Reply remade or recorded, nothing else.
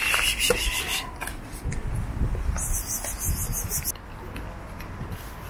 recorded